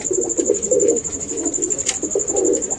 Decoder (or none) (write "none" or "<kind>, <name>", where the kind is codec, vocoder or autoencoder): none